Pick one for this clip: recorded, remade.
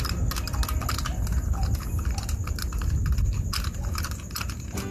recorded